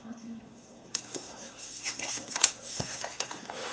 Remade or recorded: remade